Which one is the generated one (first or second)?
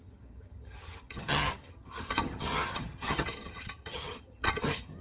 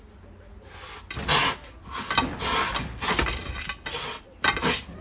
first